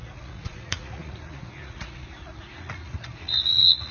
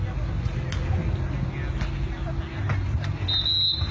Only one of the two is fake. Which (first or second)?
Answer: first